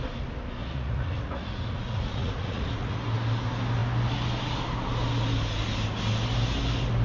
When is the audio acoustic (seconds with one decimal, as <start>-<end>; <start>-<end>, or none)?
0.0-0.6; 3.0-7.0